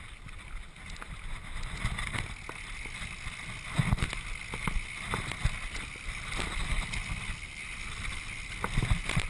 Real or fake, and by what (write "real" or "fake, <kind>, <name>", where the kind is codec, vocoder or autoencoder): real